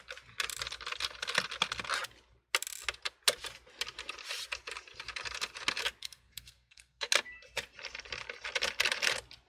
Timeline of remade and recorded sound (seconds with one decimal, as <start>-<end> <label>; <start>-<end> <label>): 0.0-6.0 recorded; 6.0-7.1 remade; 7.1-9.5 recorded